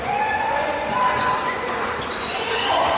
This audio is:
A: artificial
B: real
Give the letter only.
A